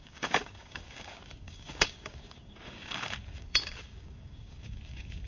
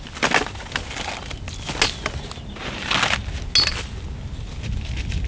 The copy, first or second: first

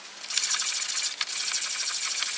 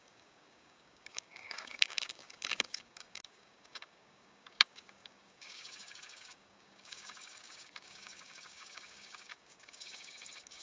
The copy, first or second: second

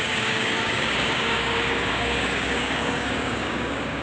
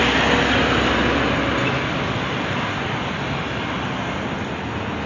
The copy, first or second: first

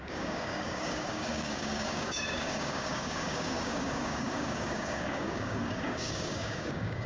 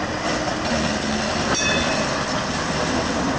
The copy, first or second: first